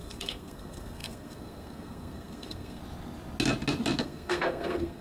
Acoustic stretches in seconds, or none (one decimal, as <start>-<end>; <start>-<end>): 2.8-4.0